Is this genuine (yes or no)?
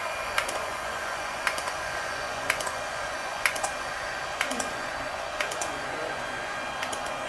no